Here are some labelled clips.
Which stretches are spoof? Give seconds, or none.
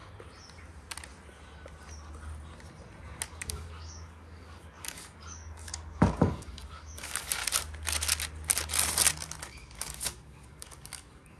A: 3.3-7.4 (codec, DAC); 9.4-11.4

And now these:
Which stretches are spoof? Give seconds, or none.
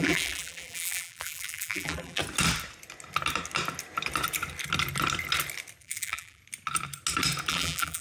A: 0.0-2.2 (vocoder, BigVGAN v2); 5.8-6.4; 7.5-8.0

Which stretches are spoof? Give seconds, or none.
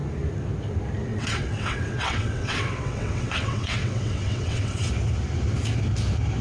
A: 1.1-4.9 (vocoder, WaveNeXt)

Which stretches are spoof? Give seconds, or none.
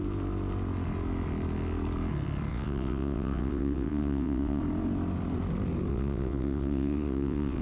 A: 2.5-4.6 (vocoder, WaveNeXt); 5.9-7.6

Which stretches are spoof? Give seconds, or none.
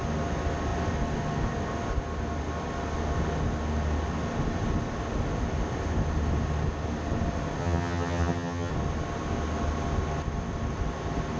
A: 7.6-8.7 (vocoder, HiFi-GAN)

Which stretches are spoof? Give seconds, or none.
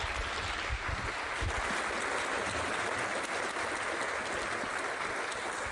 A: none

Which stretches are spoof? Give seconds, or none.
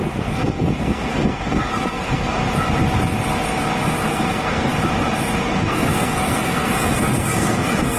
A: 0.0-2.4 (codec, SNAC); 4.1-4.7; 5.6-8.0